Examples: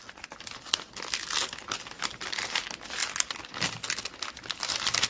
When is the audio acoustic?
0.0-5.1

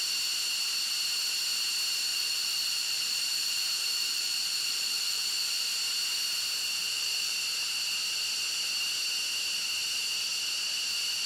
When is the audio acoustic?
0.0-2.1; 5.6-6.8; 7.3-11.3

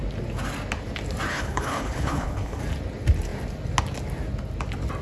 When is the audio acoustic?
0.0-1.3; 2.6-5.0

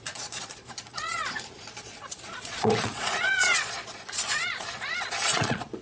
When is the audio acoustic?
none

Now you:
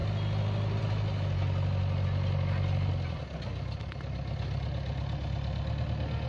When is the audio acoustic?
0.0-6.3